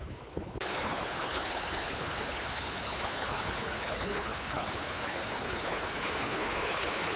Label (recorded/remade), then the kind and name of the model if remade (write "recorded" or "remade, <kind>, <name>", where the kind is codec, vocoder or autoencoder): remade, codec, HILCodec